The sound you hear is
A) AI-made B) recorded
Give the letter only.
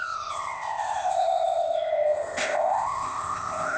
A